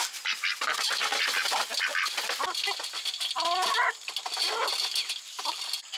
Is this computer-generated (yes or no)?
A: no